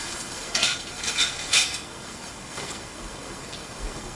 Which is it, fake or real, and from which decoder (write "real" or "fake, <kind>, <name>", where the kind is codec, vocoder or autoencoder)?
fake, codec, SNAC